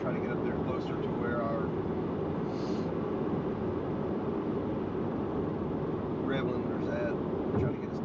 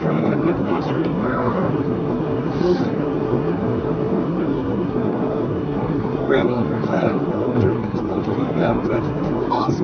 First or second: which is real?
first